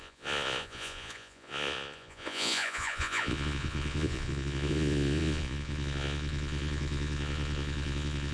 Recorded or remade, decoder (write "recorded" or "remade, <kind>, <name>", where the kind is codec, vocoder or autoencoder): remade, vocoder, Vocos